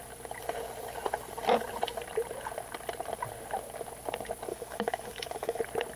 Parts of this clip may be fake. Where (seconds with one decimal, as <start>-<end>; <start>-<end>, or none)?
4.5-5.6